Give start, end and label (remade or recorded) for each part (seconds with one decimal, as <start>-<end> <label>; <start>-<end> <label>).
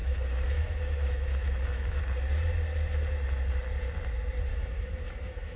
0.0-2.0 remade; 2.0-4.5 recorded; 4.5-5.6 remade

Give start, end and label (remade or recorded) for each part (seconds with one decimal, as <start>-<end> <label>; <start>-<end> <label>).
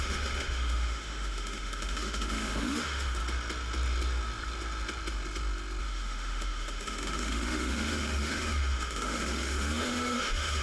0.0-3.2 remade; 3.2-5.8 recorded; 5.8-10.6 remade